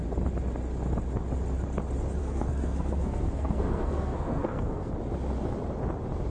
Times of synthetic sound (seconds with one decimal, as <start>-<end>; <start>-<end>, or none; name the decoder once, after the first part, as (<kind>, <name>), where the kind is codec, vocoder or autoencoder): 2.2-4.9 (codec, SNAC)